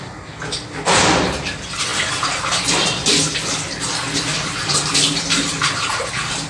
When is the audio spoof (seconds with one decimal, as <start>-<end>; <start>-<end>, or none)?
none